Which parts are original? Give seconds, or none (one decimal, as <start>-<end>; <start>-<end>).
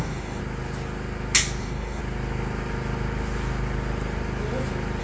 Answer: 0.4-1.6; 2.0-5.0